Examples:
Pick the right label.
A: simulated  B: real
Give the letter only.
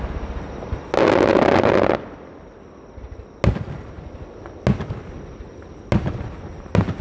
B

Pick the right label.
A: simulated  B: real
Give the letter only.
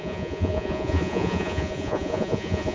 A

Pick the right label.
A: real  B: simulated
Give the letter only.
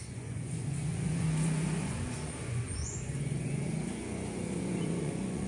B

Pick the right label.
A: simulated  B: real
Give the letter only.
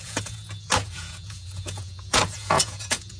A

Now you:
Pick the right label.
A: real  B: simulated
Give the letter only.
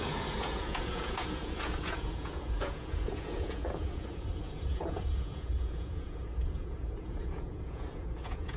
B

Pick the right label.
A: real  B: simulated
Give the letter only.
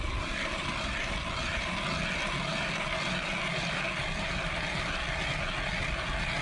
A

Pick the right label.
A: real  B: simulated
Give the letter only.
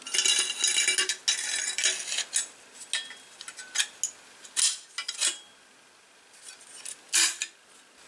A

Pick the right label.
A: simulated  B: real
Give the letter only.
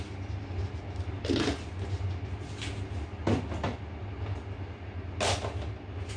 B